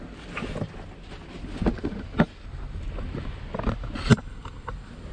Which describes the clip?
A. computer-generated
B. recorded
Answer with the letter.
B